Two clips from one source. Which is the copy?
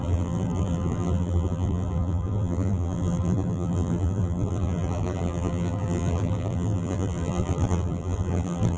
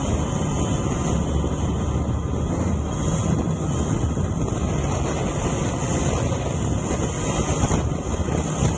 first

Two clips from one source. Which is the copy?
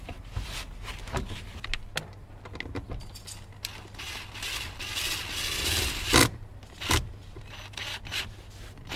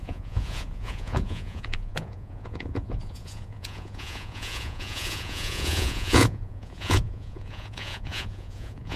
second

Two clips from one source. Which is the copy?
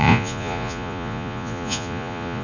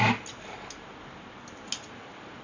first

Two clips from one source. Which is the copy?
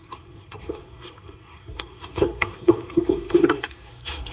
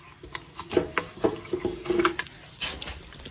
first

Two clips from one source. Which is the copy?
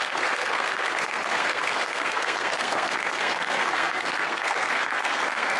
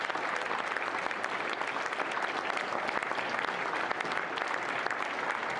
first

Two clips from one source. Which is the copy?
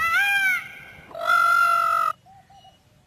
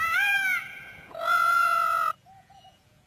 second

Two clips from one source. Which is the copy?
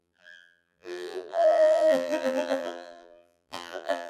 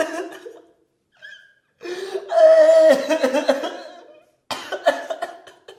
first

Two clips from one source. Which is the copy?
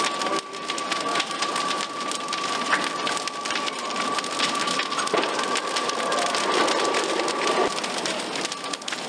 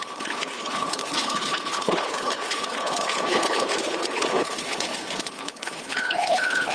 second